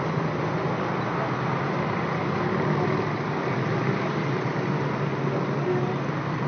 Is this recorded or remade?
recorded